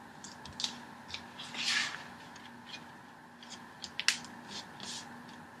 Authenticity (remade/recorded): recorded